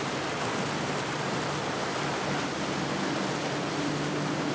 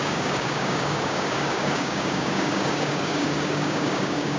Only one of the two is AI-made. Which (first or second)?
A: second